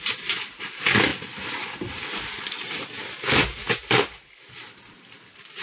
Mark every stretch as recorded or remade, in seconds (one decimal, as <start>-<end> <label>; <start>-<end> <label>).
0.0-5.6 recorded